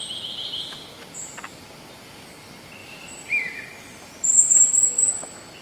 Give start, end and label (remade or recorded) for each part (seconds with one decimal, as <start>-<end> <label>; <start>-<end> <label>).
0.0-2.8 recorded; 2.8-4.7 remade; 4.7-5.6 recorded